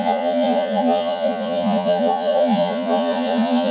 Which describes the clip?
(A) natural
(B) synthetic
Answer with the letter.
B